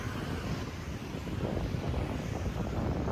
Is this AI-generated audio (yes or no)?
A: no